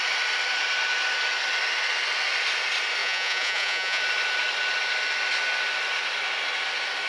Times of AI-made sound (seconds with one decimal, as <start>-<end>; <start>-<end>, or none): 3.0-4.0